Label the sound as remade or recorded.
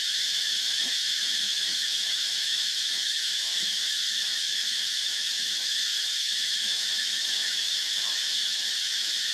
remade